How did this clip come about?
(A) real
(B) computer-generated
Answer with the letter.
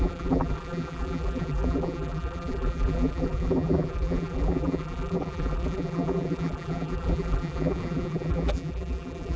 B